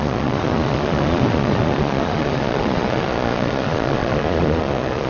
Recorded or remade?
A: remade